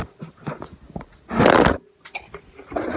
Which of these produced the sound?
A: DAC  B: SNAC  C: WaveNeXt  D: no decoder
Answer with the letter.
D